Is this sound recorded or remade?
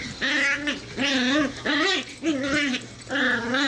recorded